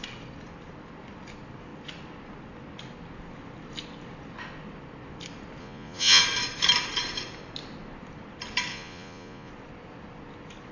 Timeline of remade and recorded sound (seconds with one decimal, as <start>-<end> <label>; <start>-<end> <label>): 0.0-5.6 recorded; 5.6-6.2 remade; 6.2-8.7 recorded; 8.7-9.5 remade; 9.5-10.7 recorded